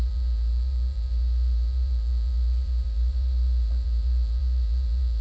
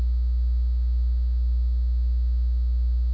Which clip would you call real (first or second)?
second